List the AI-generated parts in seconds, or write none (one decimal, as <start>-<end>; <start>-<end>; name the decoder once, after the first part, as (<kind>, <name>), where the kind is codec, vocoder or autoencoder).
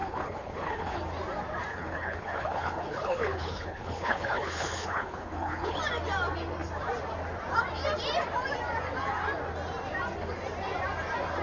0.0-1.0 (codec, HILCodec); 1.7-5.8